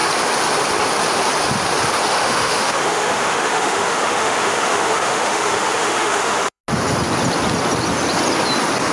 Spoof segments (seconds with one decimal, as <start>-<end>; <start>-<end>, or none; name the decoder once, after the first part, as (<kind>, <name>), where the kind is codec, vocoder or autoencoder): 2.1-6.6 (autoencoder, DAC-VAE)